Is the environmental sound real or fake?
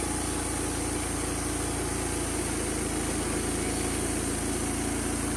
real